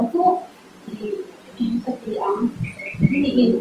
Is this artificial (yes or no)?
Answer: no